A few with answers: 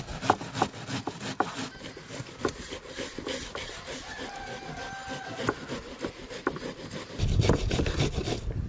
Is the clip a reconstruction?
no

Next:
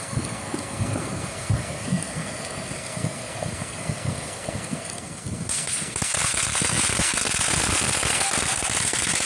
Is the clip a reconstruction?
yes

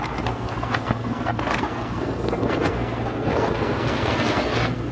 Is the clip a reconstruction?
yes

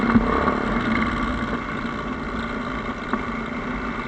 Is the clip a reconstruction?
no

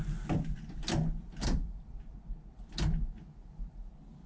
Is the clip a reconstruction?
no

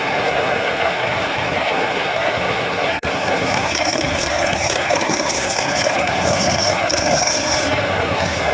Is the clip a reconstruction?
yes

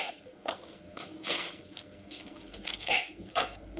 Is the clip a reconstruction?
yes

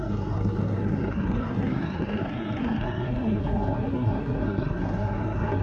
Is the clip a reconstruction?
yes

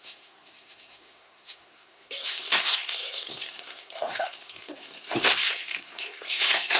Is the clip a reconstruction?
yes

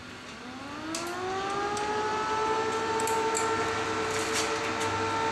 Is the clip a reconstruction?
no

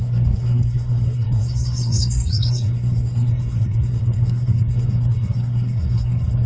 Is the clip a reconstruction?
yes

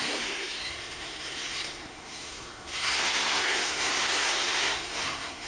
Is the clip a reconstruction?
yes